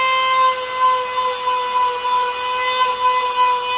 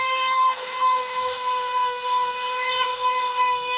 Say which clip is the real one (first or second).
first